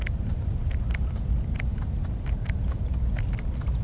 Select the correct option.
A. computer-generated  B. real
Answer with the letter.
B